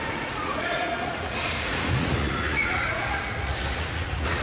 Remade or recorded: remade